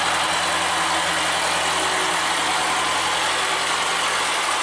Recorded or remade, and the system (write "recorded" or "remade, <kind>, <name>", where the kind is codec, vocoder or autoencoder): recorded